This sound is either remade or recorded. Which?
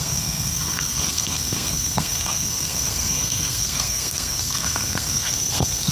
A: remade